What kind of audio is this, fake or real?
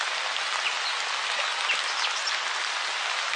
real